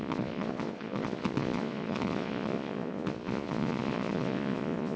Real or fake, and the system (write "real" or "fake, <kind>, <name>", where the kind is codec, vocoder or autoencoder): fake, vocoder, Vocos